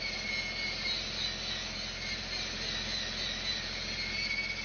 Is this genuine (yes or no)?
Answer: yes